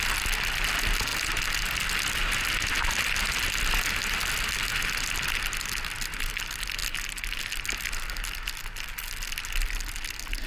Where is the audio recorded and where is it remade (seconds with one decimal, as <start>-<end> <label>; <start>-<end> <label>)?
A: 0.0-10.5 recorded